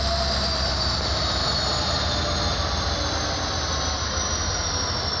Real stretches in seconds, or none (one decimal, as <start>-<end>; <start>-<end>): 0.0-5.2